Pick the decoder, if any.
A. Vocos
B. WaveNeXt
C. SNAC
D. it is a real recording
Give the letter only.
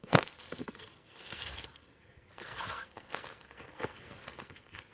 C